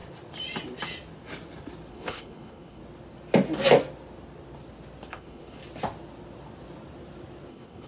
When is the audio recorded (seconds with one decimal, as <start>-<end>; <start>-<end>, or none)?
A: 0.0-1.9; 2.8-5.1; 5.6-7.5